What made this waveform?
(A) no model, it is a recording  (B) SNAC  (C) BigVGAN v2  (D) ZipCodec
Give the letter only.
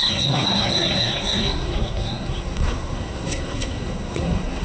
B